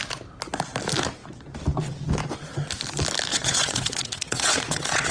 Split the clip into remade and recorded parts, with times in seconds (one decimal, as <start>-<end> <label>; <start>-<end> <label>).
0.0-3.3 recorded; 3.3-5.1 remade

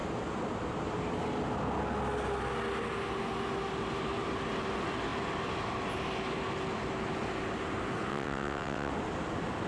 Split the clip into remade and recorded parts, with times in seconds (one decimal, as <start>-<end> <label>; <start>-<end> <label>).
0.0-8.1 recorded; 8.1-8.9 remade; 8.9-9.7 recorded

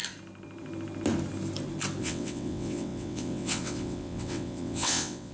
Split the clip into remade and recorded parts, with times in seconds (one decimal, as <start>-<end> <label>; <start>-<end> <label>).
0.0-2.0 recorded; 2.0-5.3 remade

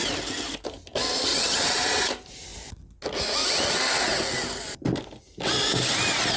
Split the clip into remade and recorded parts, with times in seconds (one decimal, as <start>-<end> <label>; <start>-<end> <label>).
0.0-1.3 recorded; 1.3-2.0 remade; 2.0-6.4 recorded

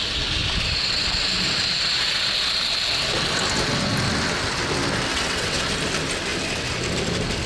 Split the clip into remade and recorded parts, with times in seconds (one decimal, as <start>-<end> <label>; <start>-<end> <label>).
0.0-5.1 recorded; 5.1-5.7 remade; 5.7-7.5 recorded

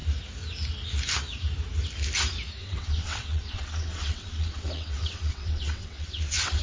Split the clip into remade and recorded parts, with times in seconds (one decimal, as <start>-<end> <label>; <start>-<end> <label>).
0.0-2.6 recorded; 2.6-6.6 remade

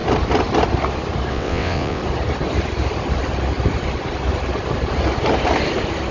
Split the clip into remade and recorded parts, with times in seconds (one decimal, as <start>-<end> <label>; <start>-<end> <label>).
0.0-1.3 recorded; 1.3-2.0 remade; 2.0-6.1 recorded

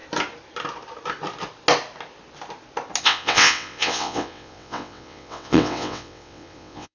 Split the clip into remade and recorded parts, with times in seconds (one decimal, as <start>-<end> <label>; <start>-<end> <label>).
0.0-3.0 recorded; 3.0-6.9 remade